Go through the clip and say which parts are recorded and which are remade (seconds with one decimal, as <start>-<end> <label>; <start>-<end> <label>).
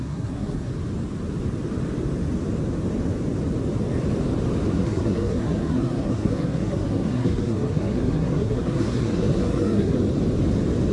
0.0-0.7 remade; 0.7-4.7 recorded; 4.7-10.0 remade; 10.0-10.9 recorded